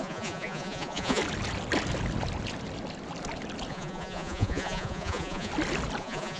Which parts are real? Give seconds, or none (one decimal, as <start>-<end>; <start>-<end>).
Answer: 1.2-3.7; 5.5-6.0